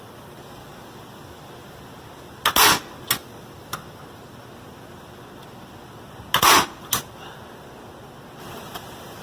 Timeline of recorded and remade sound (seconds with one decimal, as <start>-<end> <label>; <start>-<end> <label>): 0.0-9.2 recorded